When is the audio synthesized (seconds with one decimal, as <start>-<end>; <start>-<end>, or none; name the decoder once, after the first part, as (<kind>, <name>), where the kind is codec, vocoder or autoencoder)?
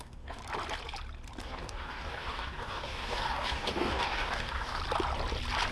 0.0-0.4 (codec, DAC); 1.4-4.8